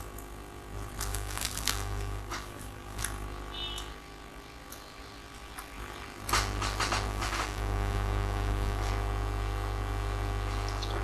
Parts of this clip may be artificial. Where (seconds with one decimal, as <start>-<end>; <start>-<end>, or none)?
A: 1.1-3.0; 7.1-8.9